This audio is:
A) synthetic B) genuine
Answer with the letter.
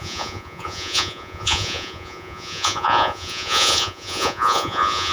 A